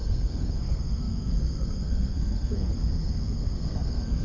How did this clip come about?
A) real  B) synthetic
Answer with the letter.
B